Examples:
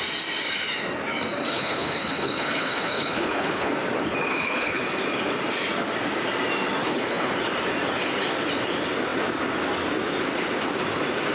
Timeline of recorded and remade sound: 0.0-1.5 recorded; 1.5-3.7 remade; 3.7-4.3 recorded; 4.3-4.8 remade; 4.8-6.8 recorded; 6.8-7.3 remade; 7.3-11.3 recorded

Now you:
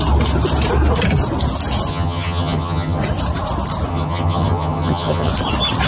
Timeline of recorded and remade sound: 0.0-1.9 recorded; 1.9-3.0 remade; 3.0-3.9 recorded; 3.9-5.3 remade; 5.3-5.9 recorded

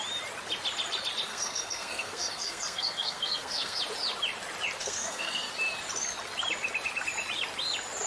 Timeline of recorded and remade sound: 0.0-1.3 recorded; 1.3-3.8 remade; 3.8-4.8 recorded; 4.8-5.5 remade; 5.5-8.1 recorded